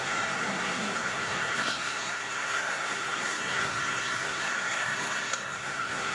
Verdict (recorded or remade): remade